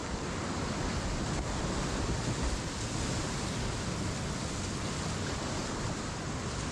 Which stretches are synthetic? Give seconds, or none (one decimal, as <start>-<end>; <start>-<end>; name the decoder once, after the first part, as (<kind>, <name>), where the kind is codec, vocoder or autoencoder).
none